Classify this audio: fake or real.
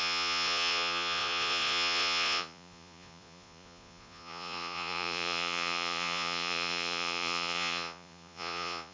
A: fake